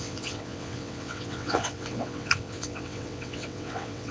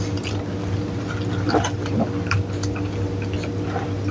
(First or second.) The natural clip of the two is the second